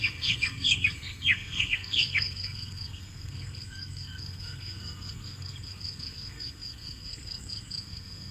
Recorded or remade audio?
remade